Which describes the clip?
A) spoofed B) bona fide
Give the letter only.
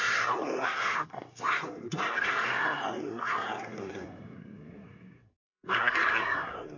A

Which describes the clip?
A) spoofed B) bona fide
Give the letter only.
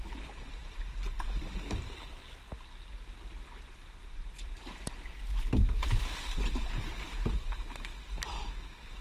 B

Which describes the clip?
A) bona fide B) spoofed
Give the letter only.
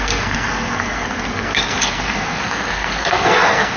B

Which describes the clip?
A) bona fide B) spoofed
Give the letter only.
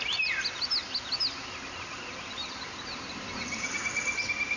A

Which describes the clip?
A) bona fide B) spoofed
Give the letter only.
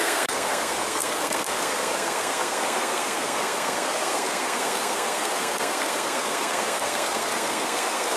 B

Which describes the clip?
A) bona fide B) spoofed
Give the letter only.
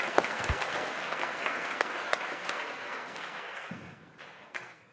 B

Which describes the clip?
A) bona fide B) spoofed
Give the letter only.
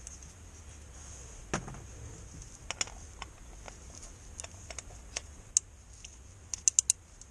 A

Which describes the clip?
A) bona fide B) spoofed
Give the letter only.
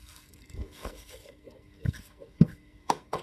B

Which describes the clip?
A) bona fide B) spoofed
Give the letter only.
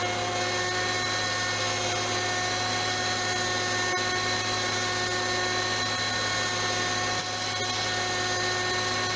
A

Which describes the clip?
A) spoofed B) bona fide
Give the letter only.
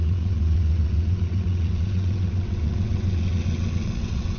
A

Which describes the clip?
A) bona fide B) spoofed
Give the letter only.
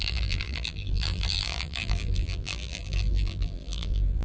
B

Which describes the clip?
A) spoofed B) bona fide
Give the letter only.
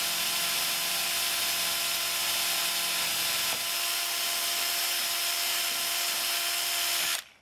B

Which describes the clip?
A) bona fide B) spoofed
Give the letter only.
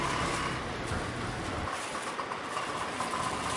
A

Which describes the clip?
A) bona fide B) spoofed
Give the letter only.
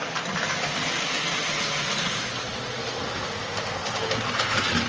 A